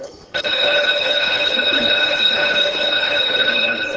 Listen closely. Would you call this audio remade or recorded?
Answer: remade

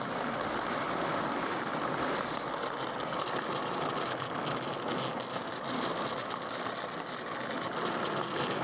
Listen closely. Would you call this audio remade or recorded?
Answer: recorded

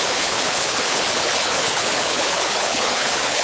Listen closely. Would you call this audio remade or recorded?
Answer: remade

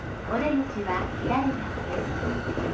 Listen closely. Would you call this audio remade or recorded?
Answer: recorded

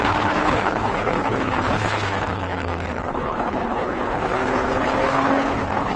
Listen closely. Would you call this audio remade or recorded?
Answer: remade